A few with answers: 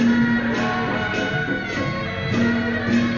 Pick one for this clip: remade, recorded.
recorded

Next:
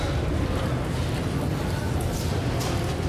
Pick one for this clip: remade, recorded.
recorded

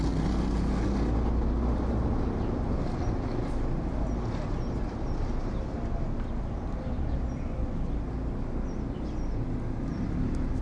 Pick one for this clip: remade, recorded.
recorded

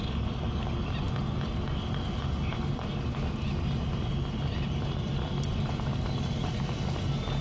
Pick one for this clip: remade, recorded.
recorded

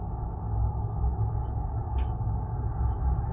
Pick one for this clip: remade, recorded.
recorded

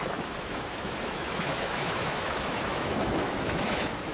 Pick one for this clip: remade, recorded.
remade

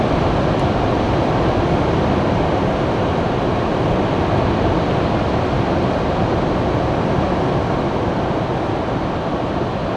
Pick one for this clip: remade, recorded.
recorded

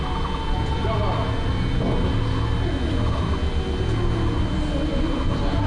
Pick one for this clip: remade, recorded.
recorded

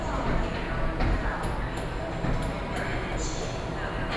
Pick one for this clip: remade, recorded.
recorded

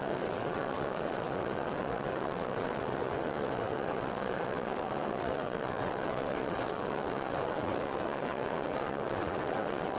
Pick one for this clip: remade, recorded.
remade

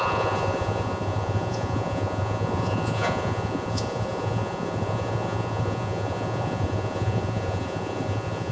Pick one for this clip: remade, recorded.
remade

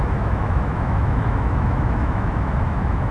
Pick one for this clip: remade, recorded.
remade